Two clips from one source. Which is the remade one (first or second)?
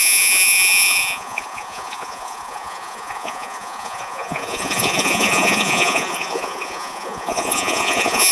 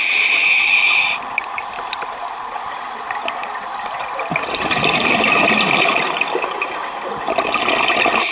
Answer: first